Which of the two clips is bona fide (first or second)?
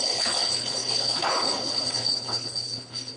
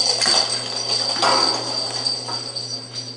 second